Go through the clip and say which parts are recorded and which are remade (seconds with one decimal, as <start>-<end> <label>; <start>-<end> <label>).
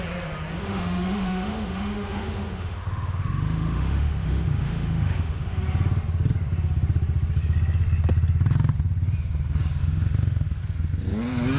0.0-0.6 recorded; 0.6-5.6 remade; 5.6-9.8 recorded; 9.8-10.6 remade; 10.6-11.6 recorded